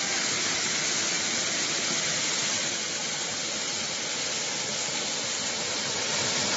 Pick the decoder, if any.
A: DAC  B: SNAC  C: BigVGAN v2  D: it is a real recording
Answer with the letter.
D